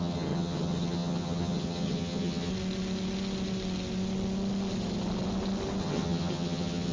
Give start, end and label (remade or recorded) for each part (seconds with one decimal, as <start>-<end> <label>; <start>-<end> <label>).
0.0-2.5 remade; 2.5-5.8 recorded; 5.8-6.9 remade